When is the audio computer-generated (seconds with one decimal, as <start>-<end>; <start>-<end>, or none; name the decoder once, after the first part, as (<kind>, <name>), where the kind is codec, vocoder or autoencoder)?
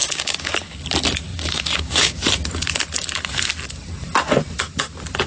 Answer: 0.0-0.8 (codec, DAC); 1.3-2.2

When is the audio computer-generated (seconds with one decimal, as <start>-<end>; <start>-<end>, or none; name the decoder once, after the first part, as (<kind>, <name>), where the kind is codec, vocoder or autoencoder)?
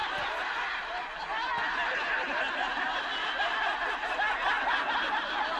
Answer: none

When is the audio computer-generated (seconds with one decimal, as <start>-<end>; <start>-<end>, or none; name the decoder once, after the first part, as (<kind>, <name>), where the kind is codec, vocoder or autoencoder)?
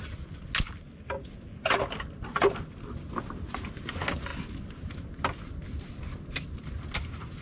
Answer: none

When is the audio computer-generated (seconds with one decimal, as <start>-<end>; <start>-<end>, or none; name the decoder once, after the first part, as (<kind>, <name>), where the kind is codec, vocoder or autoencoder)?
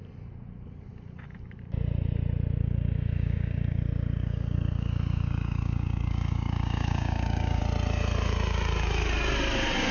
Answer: 2.6-3.8 (codec, DAC); 4.2-7.6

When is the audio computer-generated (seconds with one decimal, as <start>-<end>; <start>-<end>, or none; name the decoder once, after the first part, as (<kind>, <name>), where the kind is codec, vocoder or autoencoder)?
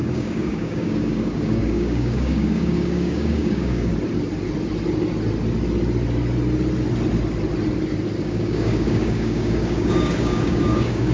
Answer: 0.0-3.9 (codec, DAC); 8.2-11.1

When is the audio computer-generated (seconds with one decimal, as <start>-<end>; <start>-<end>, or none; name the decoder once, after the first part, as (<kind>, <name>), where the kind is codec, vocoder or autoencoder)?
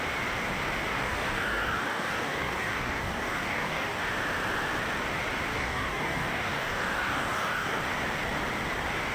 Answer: 0.9-4.1 (codec, DAC); 5.5-7.8